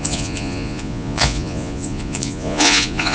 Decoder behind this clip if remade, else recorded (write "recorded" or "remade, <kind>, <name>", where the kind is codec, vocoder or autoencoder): remade, vocoder, Vocos